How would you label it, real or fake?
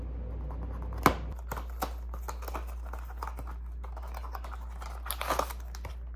real